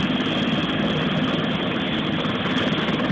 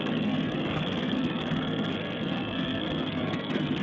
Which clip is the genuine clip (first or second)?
first